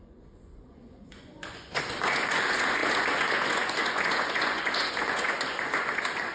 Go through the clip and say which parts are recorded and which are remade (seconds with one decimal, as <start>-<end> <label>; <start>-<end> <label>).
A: 0.0-6.3 remade